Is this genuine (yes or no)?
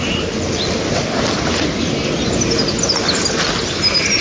yes